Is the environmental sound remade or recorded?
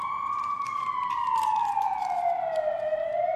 recorded